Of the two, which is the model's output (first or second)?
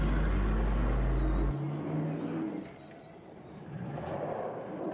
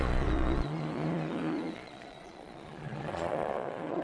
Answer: second